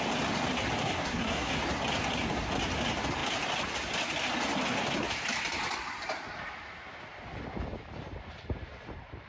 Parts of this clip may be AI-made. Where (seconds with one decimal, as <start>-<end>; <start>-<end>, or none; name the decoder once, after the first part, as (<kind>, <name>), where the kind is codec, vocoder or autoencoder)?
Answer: 0.8-1.5 (codec, SNAC)